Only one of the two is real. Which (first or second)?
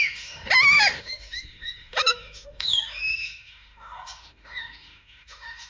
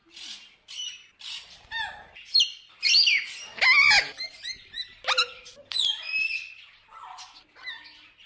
second